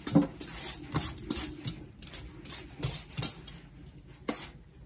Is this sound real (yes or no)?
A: yes